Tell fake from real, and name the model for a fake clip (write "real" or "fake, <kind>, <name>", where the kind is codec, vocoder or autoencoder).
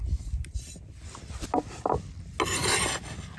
real